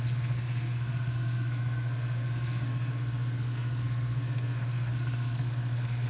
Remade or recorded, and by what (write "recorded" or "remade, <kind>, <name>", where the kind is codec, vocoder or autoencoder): remade, codec, SNAC